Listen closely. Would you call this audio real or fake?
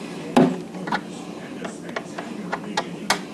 real